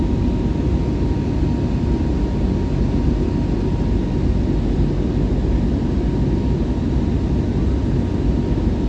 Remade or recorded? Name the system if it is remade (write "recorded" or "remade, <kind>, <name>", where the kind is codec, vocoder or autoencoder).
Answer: recorded